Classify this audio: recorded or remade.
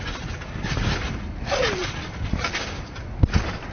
recorded